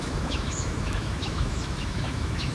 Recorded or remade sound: remade